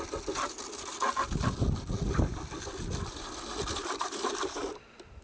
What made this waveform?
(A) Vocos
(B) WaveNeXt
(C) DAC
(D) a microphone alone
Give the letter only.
D